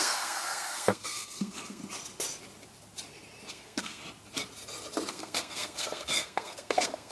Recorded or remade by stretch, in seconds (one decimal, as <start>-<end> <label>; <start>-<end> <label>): 0.0-1.8 remade; 1.8-3.5 recorded; 3.5-4.0 remade; 4.0-5.1 recorded; 5.1-7.1 remade